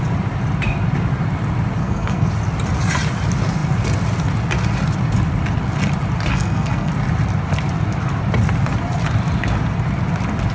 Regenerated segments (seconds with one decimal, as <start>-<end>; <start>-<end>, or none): 1.8-2.3; 6.3-6.9